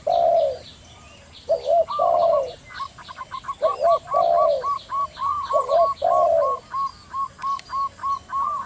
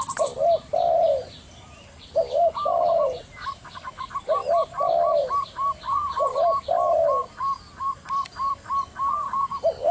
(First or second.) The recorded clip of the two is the first